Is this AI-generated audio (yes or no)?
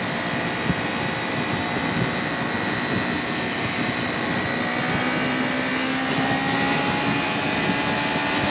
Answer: no